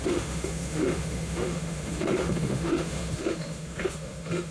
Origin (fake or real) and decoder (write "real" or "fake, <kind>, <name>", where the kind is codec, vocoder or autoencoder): fake, autoencoder, DAC-VAE